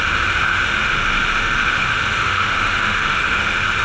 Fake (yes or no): yes